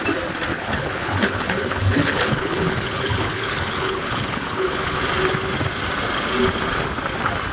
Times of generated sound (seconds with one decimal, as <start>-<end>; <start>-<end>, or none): 0.5-5.0